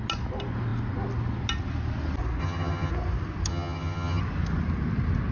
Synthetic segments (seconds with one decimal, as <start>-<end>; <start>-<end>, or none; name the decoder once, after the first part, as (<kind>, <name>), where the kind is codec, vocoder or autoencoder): 2.4-2.9 (vocoder, HiFi-GAN); 3.5-4.2